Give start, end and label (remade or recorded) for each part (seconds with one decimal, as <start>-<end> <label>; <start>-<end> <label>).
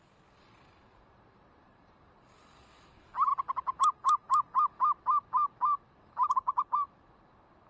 0.0-7.7 recorded